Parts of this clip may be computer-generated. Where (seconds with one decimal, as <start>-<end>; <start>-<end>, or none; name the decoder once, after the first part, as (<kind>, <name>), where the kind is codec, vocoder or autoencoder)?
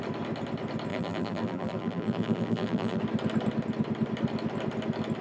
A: 0.9-3.0 (vocoder, BigVGAN v2)